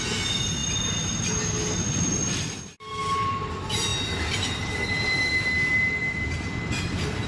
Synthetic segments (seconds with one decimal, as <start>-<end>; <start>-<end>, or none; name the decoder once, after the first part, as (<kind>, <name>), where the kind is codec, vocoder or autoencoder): 3.9-6.2 (vocoder, BigVGAN v2)